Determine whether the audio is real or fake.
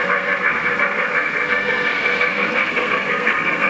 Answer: fake